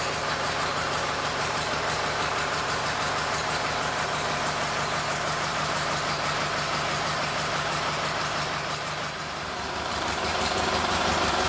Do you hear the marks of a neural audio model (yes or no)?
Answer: yes